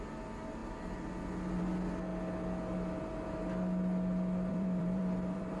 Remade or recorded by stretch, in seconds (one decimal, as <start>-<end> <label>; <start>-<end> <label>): 0.0-4.5 recorded; 4.5-5.6 remade